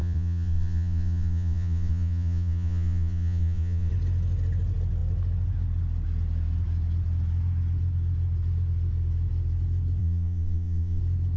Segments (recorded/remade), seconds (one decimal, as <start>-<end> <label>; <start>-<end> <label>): 0.0-3.9 remade; 3.9-10.0 recorded; 10.0-11.0 remade; 11.0-11.4 recorded